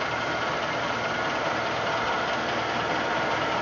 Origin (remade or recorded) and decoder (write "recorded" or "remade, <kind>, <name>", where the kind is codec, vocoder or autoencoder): recorded